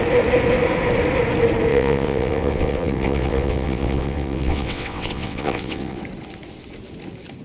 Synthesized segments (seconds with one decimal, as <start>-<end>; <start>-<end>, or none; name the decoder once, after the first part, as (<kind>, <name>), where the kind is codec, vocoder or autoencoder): 1.7-6.0 (vocoder, WaveNeXt)